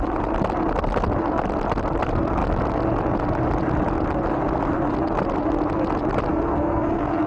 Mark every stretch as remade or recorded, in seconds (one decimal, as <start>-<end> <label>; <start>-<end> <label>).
0.0-6.3 recorded; 6.3-7.3 remade